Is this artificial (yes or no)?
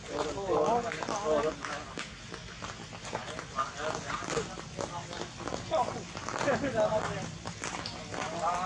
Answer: no